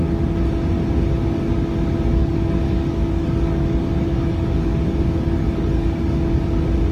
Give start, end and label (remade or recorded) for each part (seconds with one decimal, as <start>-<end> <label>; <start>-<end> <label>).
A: 0.0-2.2 recorded; 2.2-6.3 remade; 6.3-6.9 recorded